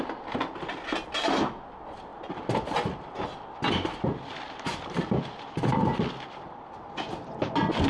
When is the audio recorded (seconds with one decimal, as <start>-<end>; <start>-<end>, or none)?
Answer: 0.0-7.9